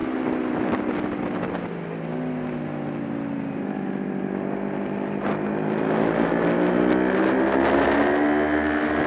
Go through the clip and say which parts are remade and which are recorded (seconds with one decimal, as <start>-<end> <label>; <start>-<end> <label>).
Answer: 0.0-9.1 recorded